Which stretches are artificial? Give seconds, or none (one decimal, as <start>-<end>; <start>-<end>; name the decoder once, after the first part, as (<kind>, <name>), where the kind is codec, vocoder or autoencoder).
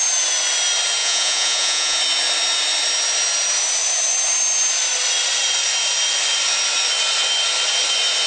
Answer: 1.0-2.0 (vocoder, Vocos)